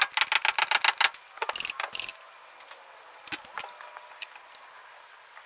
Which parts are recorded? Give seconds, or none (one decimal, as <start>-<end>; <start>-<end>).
0.0-5.5